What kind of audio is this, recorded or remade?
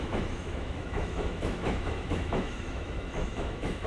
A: remade